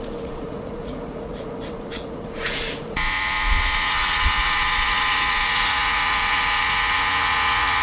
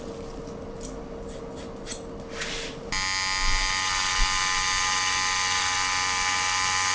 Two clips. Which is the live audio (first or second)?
second